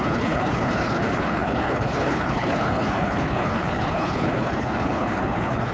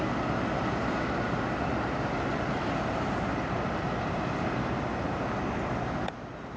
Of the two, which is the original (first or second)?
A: second